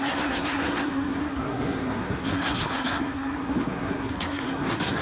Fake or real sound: fake